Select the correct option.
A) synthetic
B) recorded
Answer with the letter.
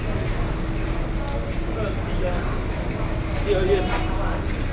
B